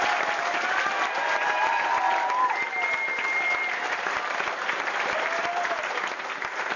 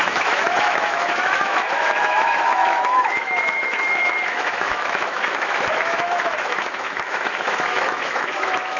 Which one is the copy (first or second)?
second